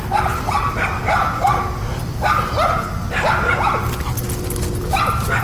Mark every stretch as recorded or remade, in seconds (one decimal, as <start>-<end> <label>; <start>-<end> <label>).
0.0-5.4 recorded